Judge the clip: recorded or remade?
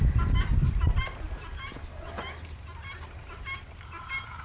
recorded